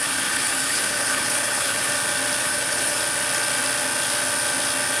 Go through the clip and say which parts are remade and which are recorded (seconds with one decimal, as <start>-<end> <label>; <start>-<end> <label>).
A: 0.0-1.9 remade; 1.9-2.4 recorded; 2.4-3.0 remade; 3.0-5.0 recorded